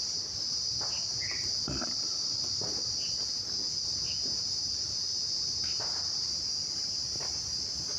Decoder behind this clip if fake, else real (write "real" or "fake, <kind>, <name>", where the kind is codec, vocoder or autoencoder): real